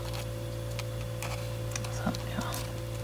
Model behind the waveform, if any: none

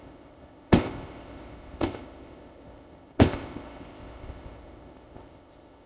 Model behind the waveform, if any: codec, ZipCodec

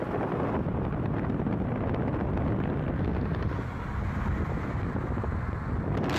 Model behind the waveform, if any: none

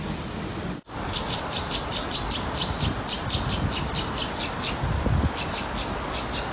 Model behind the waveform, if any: none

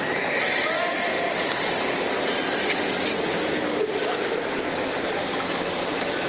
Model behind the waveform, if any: none